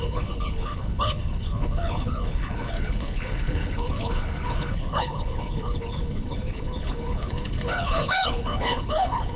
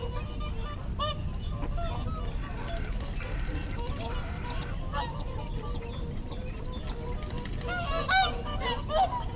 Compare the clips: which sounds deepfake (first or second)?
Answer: first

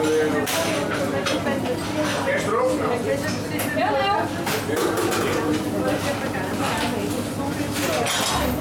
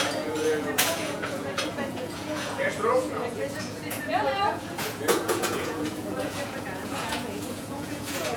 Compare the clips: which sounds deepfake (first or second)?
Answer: second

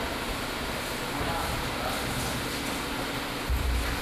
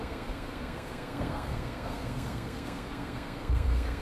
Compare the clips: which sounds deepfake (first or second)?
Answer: second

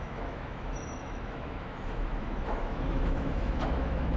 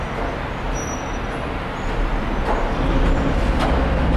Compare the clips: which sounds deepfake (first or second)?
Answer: first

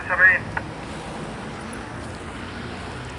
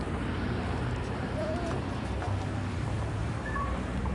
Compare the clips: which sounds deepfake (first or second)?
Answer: second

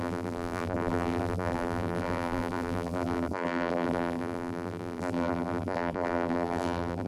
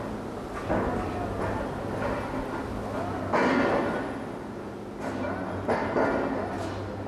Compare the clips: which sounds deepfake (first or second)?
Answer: first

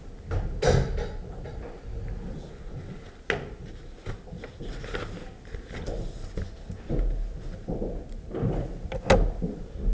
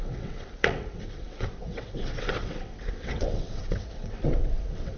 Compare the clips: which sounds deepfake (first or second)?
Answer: second